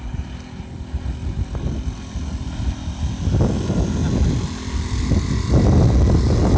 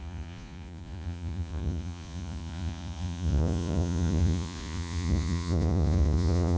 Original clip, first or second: first